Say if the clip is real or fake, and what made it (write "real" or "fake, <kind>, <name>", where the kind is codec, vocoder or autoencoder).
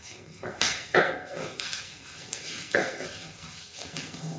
fake, codec, SNAC